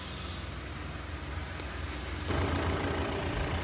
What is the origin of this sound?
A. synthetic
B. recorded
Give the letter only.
B